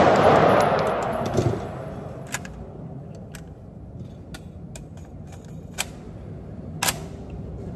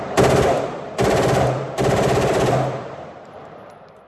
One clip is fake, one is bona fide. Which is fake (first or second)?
second